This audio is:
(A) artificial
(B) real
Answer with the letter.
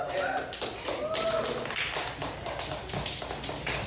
B